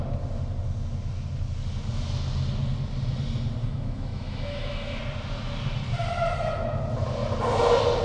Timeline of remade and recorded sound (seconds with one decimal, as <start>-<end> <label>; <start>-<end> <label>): 0.0-3.6 recorded; 3.6-5.0 remade; 5.0-8.0 recorded